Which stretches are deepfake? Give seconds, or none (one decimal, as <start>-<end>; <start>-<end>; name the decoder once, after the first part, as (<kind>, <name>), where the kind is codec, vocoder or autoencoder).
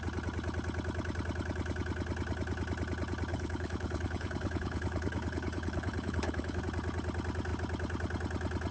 3.3-6.6 (codec, HILCodec)